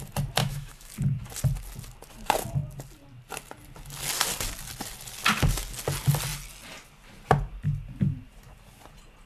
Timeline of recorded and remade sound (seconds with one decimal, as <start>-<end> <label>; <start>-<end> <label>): 0.0-0.4 recorded; 0.4-0.9 remade; 0.9-9.3 recorded